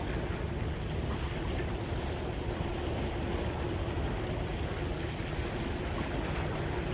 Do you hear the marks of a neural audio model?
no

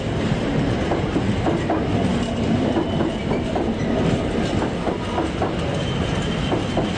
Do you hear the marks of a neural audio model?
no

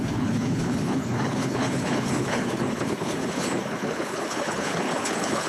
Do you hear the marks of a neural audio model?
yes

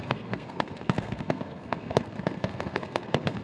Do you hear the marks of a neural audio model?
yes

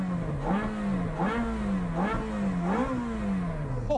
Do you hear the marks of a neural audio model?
no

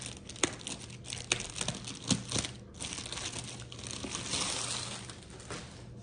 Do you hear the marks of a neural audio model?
no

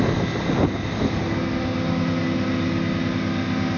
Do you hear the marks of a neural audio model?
no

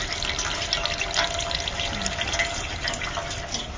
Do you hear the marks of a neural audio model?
no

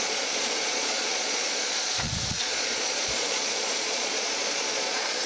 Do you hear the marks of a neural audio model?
yes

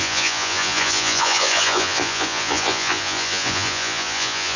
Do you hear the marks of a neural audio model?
yes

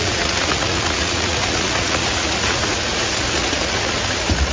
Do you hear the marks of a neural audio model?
yes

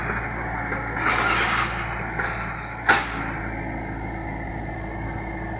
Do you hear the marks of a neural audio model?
no